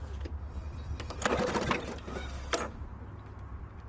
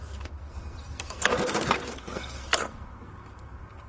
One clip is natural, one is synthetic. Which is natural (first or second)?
first